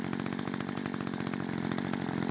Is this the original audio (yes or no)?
yes